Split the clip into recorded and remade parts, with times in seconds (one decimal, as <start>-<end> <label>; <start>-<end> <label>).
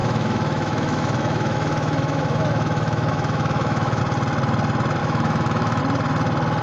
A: 0.0-4.0 remade; 4.0-5.0 recorded; 5.0-5.8 remade; 5.8-6.6 recorded